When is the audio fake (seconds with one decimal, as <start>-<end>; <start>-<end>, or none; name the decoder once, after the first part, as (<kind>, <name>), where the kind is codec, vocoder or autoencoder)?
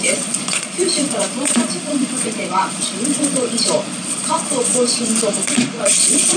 0.0-5.1 (vocoder, Vocos); 5.8-6.4